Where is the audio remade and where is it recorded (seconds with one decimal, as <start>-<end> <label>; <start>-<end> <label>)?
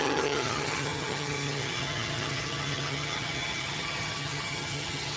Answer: 0.0-5.2 remade